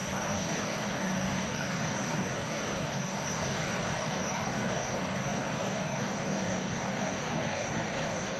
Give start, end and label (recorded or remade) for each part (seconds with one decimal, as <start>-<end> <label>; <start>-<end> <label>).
0.0-8.4 remade